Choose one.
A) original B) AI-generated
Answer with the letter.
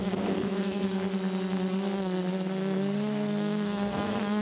B